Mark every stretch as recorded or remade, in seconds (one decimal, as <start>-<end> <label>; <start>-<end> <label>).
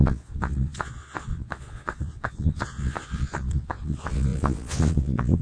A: 0.0-5.4 remade